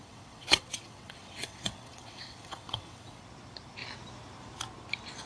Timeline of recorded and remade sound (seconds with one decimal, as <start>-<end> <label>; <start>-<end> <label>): 0.0-3.2 remade; 3.2-5.3 recorded